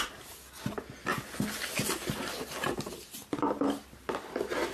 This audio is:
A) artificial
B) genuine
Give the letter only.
B